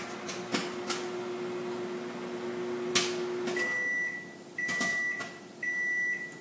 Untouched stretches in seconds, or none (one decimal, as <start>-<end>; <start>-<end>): 0.0-6.4